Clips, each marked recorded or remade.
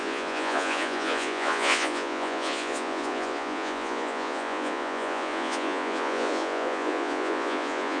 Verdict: remade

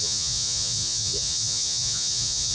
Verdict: remade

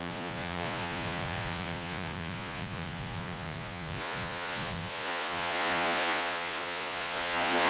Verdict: remade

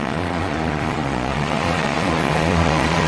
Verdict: remade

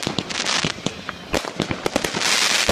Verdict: recorded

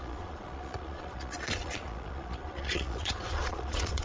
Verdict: remade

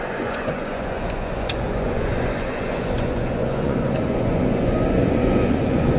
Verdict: remade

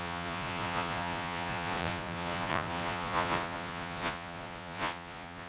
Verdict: remade